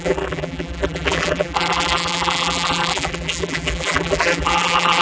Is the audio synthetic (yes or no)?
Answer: yes